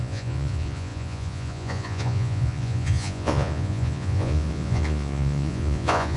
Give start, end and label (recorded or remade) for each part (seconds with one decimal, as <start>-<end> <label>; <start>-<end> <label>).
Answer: 0.0-6.2 remade